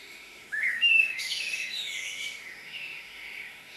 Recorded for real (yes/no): no